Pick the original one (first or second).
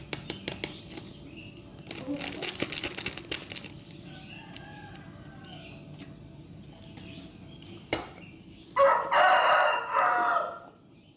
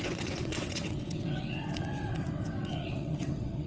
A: first